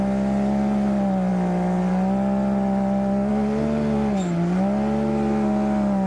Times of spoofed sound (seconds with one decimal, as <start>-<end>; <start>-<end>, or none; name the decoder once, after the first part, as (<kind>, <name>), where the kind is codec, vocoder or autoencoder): none